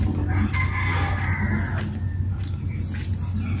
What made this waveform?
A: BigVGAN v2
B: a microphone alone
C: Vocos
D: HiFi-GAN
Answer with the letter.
B